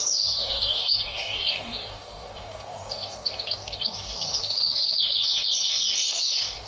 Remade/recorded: remade